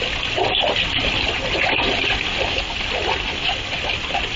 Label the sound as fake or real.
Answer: real